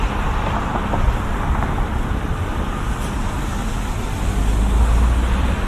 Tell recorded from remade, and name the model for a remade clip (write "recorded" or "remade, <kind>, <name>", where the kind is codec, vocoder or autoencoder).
recorded